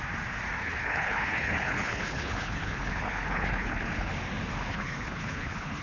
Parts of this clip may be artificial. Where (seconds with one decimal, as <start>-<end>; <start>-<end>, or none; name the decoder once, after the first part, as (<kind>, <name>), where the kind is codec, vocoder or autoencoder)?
0.6-4.1 (codec, HILCodec); 4.7-5.8

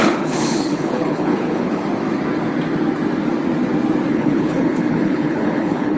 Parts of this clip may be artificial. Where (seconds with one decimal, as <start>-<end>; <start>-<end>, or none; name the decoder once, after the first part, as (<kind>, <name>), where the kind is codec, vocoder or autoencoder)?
0.0-1.8 (codec, HILCodec); 4.1-6.0

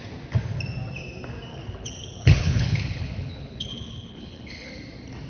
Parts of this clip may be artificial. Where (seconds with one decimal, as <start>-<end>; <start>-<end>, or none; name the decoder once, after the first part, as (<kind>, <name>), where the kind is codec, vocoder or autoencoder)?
1.5-4.7 (codec, HILCodec)